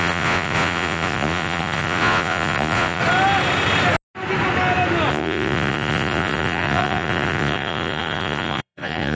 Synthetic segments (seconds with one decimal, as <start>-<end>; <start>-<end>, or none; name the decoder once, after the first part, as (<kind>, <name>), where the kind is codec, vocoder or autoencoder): 0.0-3.0 (vocoder, Vocos); 5.1-9.1